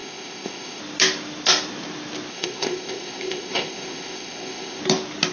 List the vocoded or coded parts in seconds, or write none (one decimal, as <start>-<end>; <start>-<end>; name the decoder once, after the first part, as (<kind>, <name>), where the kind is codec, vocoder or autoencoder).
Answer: 0.0-0.8 (codec, ZipCodec); 2.3-4.8